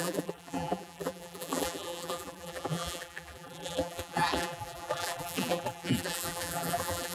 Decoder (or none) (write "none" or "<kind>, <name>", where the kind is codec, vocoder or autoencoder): vocoder, BigVGAN v2